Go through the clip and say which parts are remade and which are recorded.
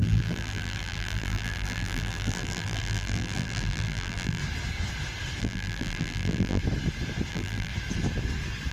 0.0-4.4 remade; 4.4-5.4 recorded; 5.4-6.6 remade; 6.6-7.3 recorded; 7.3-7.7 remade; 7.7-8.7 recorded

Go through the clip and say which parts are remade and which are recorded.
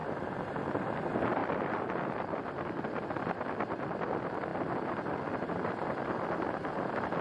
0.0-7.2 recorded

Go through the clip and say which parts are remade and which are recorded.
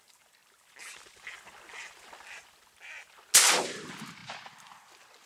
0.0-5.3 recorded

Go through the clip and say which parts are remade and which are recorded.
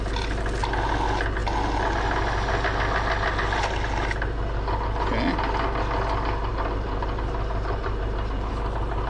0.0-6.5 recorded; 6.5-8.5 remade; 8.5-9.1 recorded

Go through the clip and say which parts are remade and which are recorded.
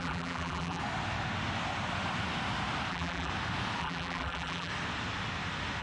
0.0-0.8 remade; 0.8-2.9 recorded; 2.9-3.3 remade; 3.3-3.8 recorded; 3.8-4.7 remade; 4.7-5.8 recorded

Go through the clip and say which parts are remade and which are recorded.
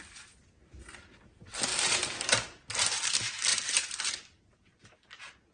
0.0-3.5 recorded; 3.5-4.1 remade; 4.1-5.5 recorded